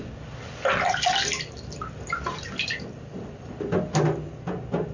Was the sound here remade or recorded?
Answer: recorded